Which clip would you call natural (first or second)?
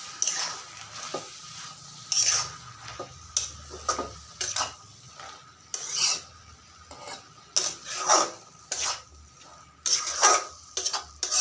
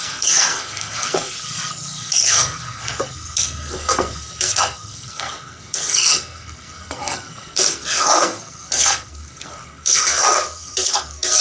first